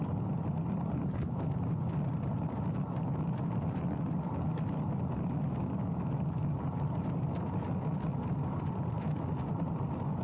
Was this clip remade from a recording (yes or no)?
no